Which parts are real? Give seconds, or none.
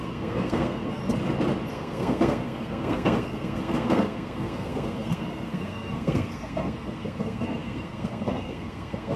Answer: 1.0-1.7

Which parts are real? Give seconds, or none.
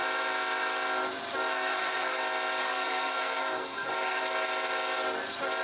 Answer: 0.0-1.5; 2.2-2.6; 4.2-5.6